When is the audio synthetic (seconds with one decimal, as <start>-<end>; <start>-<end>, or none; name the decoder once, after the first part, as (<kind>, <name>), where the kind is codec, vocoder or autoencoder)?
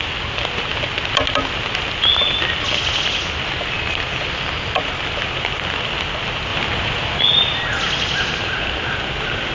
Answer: none